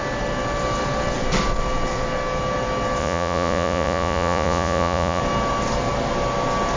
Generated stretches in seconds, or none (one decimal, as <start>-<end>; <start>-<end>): 3.0-5.2